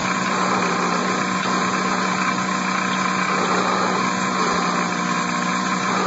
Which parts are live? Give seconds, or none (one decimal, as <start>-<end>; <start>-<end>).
0.6-1.0; 4.4-5.5